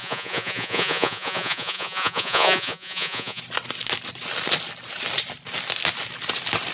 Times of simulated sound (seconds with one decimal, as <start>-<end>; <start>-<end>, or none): 0.0-3.4